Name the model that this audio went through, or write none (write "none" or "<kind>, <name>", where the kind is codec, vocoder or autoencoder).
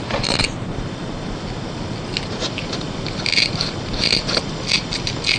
none